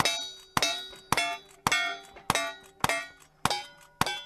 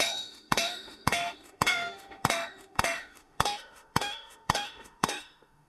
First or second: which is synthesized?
second